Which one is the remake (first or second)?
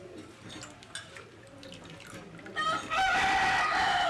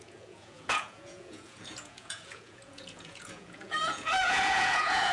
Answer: second